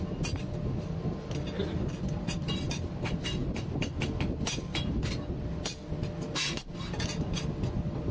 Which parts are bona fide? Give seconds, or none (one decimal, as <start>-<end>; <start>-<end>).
0.0-8.1